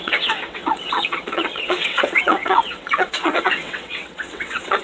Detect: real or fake fake